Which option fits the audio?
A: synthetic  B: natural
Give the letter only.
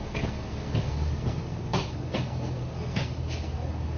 A